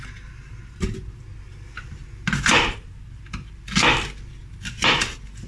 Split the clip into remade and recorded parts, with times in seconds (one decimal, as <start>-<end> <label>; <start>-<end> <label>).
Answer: 0.0-2.1 remade; 2.1-3.2 recorded; 3.2-4.4 remade; 4.4-5.5 recorded